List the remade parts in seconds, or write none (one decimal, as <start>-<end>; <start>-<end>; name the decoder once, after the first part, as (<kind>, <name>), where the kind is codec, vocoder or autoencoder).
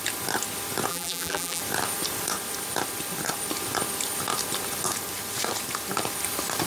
0.9-1.6 (vocoder, BigVGAN v2)